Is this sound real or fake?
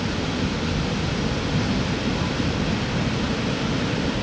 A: real